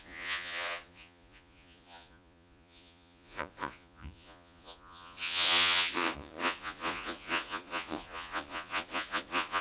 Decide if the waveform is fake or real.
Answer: fake